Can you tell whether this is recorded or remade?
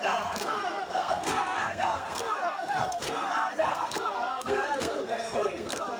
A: remade